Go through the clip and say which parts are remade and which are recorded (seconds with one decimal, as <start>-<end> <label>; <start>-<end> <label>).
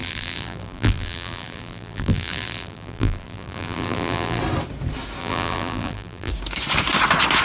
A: 0.0-4.4 remade; 4.4-5.2 recorded; 5.2-6.3 remade; 6.3-7.4 recorded